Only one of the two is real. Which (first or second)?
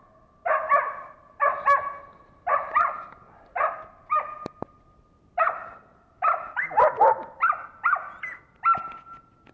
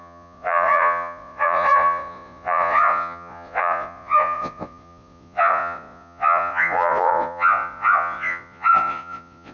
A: first